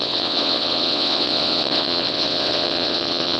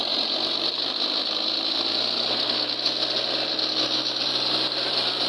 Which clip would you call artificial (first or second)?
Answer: first